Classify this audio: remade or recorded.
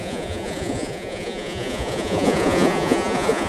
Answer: remade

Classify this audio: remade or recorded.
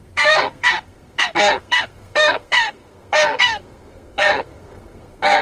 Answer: remade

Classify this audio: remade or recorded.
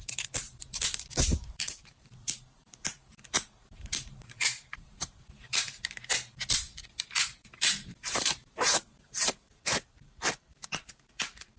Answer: remade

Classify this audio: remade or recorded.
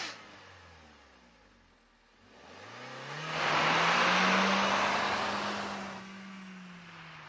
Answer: recorded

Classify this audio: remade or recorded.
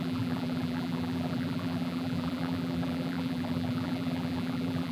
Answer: remade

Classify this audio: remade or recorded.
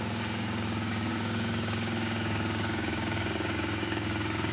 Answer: remade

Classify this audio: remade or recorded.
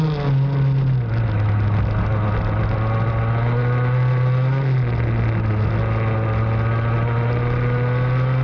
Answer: recorded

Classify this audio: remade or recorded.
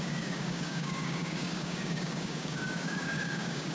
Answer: remade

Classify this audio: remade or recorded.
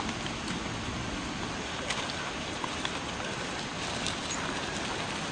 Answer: recorded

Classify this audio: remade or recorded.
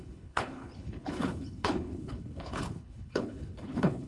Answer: remade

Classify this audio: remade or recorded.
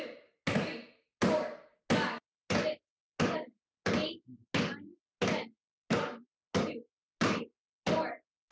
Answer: recorded